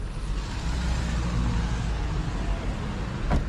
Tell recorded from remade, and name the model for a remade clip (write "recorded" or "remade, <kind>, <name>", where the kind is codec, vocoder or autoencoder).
recorded